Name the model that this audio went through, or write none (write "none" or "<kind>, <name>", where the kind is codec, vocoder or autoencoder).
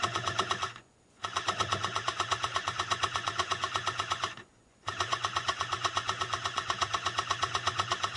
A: vocoder, Vocos